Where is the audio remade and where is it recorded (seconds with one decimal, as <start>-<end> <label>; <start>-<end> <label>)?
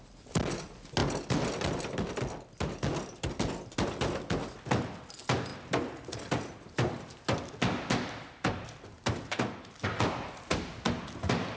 0.0-11.6 recorded